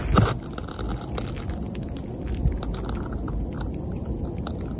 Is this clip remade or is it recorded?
recorded